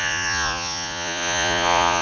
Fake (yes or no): yes